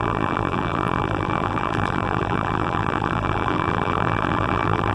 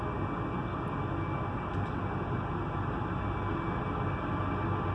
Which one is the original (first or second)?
second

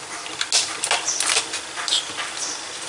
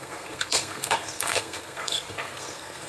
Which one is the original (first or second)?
first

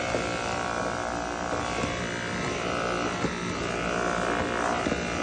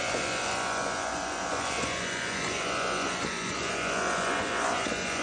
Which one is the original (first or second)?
first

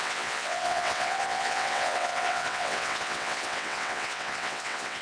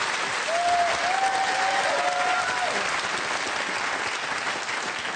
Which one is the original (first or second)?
second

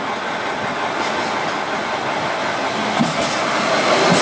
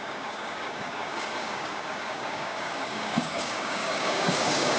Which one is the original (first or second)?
first